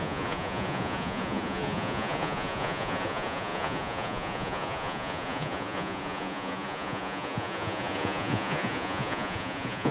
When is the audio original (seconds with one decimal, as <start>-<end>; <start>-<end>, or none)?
none